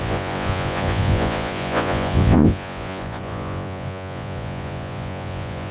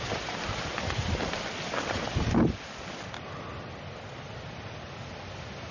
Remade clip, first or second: first